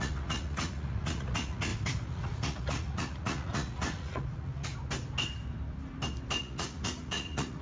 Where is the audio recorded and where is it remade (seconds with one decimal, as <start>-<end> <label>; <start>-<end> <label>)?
0.0-4.7 remade; 4.7-6.4 recorded; 6.4-7.6 remade

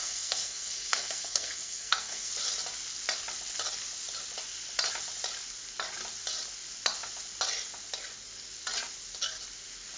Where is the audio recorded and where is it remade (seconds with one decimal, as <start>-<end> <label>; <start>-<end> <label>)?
0.0-2.3 remade; 2.3-10.0 recorded

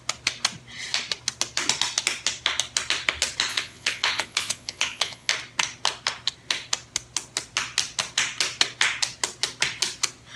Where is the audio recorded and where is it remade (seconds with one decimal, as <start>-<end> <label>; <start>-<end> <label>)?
0.0-3.5 recorded; 3.5-5.3 remade; 5.3-10.4 recorded

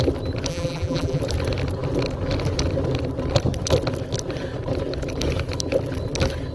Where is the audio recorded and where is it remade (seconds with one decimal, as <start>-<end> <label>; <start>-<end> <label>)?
0.0-0.5 recorded; 0.5-1.2 remade; 1.2-6.5 recorded

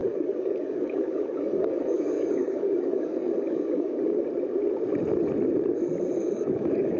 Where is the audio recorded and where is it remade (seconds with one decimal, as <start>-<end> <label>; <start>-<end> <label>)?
0.0-4.2 remade; 4.2-6.2 recorded; 6.2-7.0 remade

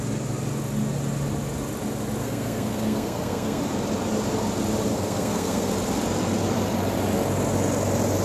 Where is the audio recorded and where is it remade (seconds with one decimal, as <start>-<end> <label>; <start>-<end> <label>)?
0.0-2.2 recorded; 2.2-3.6 remade; 3.6-4.9 recorded; 4.9-5.7 remade; 5.7-8.2 recorded